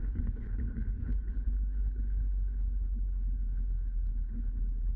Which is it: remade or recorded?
remade